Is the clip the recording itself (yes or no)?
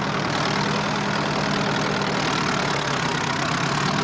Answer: yes